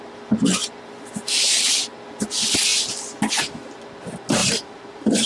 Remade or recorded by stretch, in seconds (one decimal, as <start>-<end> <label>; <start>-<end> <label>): 0.0-4.4 recorded; 4.4-5.3 remade